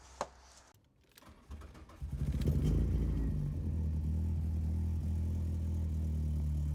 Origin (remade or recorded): recorded